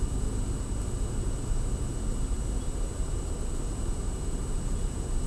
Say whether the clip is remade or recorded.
recorded